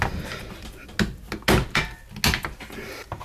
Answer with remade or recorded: recorded